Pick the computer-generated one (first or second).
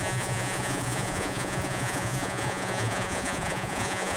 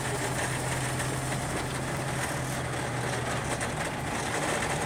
first